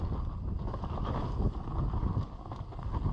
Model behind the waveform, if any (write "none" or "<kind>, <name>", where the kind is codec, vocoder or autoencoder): none